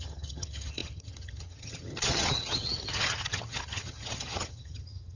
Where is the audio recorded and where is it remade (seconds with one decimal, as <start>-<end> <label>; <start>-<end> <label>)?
0.0-5.2 remade